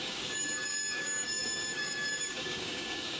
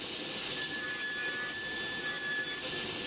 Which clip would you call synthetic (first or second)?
first